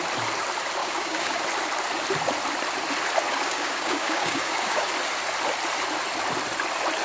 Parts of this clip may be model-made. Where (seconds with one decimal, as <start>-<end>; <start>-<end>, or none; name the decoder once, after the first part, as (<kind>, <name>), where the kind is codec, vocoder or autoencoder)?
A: 0.8-1.4 (codec, DAC); 3.3-4.9

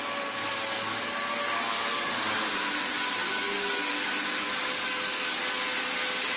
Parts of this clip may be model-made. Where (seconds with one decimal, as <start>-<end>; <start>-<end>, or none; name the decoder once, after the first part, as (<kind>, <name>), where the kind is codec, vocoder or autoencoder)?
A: 0.4-2.5 (codec, DAC); 3.2-5.4

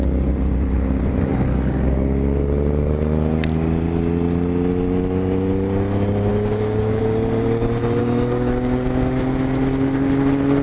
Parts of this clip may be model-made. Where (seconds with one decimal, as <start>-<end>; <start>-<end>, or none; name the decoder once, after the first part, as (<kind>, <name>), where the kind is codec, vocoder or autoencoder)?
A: 6.3-7.0 (codec, DAC); 8.0-9.2

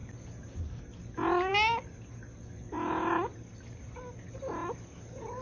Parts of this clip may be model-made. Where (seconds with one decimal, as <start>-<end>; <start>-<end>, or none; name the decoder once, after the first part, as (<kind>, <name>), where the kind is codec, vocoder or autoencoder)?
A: none

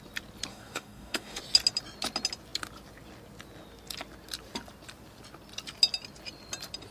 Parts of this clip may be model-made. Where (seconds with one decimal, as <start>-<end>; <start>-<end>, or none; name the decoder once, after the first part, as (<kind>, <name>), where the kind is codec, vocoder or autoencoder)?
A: 0.5-1.4 (codec, DAC)